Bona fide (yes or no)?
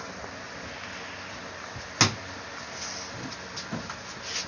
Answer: yes